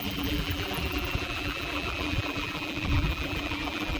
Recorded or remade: remade